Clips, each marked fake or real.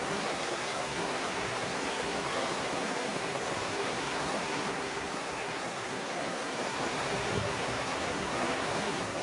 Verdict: fake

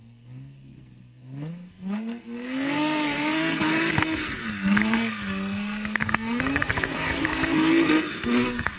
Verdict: fake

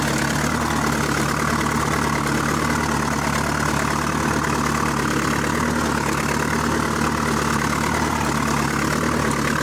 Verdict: real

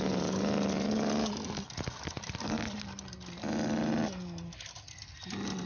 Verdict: real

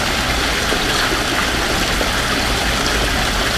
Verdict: real